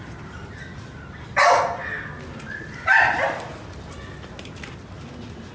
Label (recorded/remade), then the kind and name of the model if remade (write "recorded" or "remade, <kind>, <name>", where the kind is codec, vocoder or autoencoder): recorded